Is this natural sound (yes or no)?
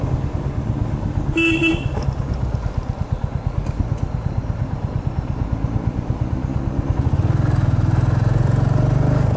yes